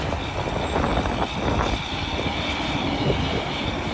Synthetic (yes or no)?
no